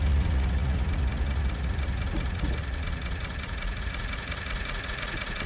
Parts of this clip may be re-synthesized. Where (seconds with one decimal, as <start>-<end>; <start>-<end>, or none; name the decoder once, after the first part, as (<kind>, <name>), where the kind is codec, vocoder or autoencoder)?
0.0-5.5 (vocoder, Vocos)